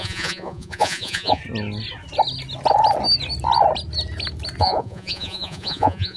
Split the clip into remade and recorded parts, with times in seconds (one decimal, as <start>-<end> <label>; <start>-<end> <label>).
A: 0.0-1.4 remade; 1.4-4.6 recorded; 4.6-6.2 remade